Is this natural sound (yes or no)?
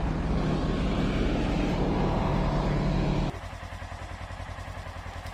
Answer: yes